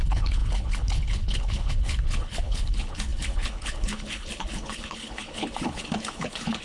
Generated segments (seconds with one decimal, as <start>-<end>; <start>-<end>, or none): 0.0-6.6